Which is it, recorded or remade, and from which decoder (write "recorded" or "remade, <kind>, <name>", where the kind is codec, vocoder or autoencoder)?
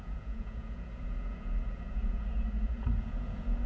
remade, vocoder, Vocos